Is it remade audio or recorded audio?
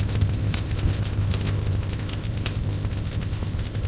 remade